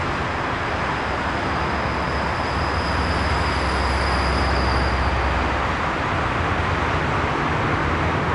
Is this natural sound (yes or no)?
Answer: yes